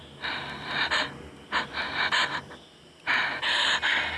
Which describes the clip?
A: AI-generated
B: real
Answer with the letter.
B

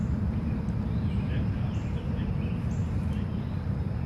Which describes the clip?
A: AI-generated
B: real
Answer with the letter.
A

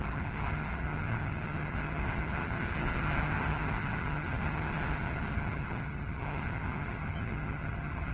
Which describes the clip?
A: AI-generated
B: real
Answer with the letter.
A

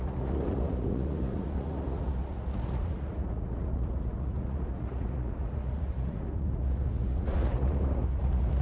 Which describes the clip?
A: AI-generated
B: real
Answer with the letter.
A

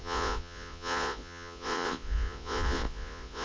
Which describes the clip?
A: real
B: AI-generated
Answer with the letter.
B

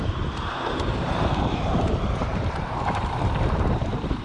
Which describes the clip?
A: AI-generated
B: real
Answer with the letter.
A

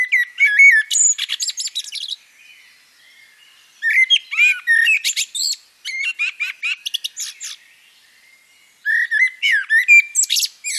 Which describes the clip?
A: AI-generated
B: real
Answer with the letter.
B